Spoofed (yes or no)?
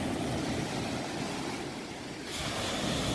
no